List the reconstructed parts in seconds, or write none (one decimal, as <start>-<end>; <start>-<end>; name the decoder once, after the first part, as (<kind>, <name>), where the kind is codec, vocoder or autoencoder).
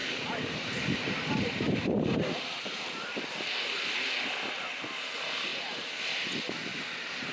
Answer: 0.0-2.9 (vocoder, BigVGAN v2); 5.5-6.0; 6.7-7.3